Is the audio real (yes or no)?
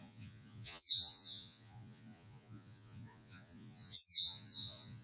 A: no